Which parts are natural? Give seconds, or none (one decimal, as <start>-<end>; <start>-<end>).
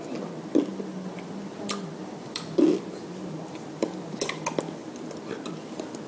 0.0-0.7; 2.8-6.1